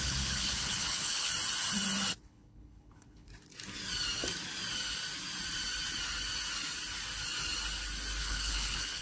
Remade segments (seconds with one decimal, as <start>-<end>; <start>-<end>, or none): 0.0-1.3; 2.2-3.3; 8.2-9.0